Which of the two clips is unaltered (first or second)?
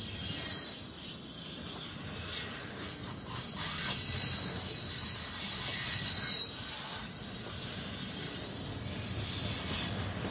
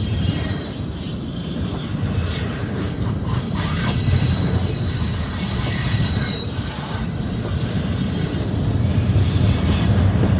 first